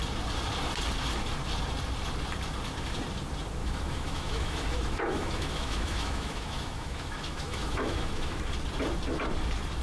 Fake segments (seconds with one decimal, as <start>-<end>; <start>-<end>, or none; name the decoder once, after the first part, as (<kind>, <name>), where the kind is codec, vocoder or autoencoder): 3.6-8.4 (autoencoder, DAC-VAE)